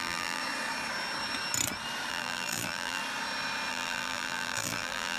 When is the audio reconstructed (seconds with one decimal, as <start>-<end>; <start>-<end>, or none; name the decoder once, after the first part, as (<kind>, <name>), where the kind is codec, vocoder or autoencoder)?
0.0-0.4 (vocoder, BigVGAN v2); 2.1-3.0; 3.7-5.2